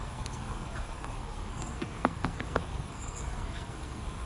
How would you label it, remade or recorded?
remade